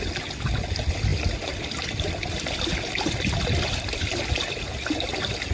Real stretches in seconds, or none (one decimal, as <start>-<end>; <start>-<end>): 0.0-5.5

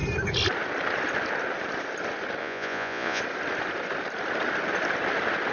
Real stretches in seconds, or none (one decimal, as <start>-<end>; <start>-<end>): 0.0-2.4; 3.2-5.5